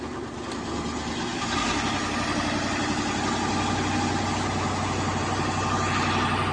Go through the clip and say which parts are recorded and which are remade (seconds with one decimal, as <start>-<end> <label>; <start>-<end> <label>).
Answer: 0.0-6.5 recorded